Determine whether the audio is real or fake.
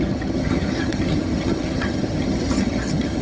fake